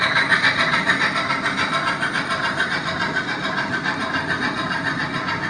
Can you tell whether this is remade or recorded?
remade